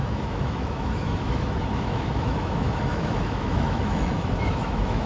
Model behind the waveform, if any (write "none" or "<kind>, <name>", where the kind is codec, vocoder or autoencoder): autoencoder, DAC-VAE